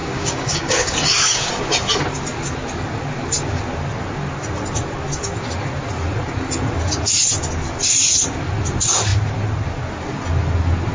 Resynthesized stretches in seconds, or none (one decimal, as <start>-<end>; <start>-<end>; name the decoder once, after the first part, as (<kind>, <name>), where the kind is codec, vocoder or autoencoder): 0.0-1.5 (codec, DAC)